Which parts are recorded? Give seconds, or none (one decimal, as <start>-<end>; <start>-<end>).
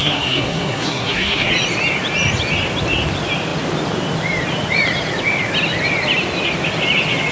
1.5-7.3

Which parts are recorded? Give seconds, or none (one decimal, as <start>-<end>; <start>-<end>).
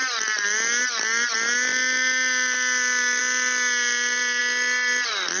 0.0-5.4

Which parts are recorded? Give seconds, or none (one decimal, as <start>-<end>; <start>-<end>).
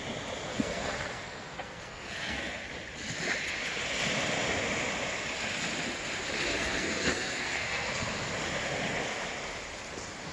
0.0-0.5; 2.7-6.5; 8.1-10.3